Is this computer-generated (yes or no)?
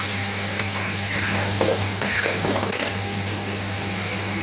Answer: yes